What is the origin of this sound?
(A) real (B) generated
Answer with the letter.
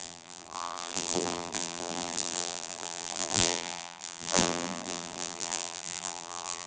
B